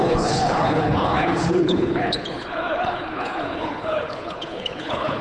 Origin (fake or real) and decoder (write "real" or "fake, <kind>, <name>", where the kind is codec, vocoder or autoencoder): fake, codec, HILCodec